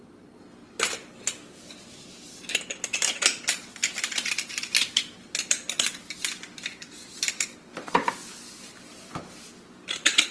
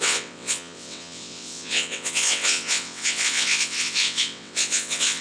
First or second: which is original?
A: first